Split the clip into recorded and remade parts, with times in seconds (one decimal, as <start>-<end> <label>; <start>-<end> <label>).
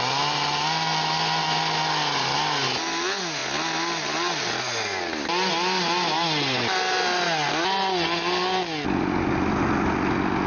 0.0-10.5 recorded